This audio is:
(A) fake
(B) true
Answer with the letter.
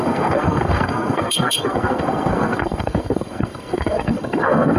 A